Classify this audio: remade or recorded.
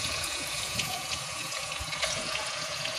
remade